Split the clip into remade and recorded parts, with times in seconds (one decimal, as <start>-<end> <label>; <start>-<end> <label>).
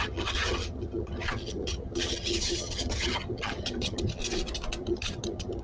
0.0-4.2 remade; 4.2-4.8 recorded; 4.8-5.6 remade